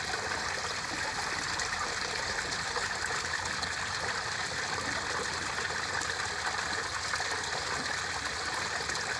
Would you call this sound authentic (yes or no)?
yes